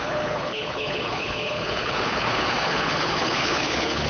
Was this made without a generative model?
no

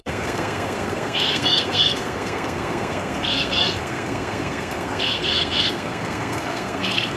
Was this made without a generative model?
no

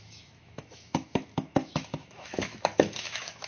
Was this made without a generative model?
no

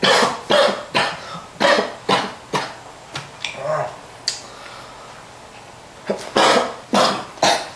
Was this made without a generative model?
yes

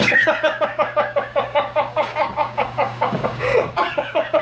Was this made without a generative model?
no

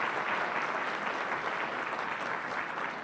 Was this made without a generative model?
yes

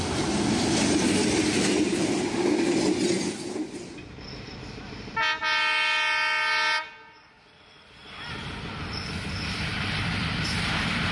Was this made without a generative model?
yes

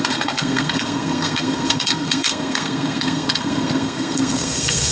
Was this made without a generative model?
no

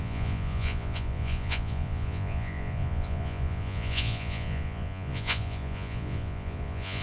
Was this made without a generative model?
no